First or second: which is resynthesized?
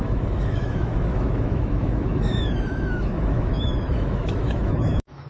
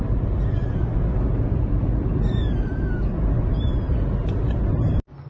first